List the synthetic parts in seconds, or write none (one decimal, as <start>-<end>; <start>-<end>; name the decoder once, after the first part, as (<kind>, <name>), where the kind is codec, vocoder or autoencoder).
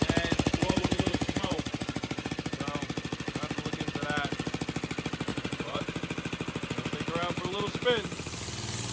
0.6-2.3 (vocoder, Vocos); 5.3-5.8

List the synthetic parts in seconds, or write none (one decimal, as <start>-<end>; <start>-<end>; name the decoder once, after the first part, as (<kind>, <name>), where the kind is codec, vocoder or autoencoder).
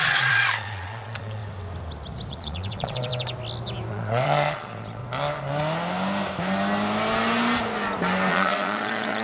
0.0-1.4 (vocoder, Vocos); 2.3-3.1; 3.9-5.0; 8.3-9.2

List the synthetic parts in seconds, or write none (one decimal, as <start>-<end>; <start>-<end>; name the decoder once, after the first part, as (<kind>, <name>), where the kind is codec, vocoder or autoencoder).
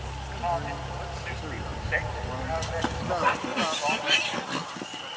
none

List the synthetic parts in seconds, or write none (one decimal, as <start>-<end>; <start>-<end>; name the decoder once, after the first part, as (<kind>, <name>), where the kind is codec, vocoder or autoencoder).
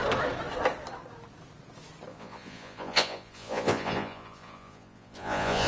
2.1-5.7 (vocoder, Vocos)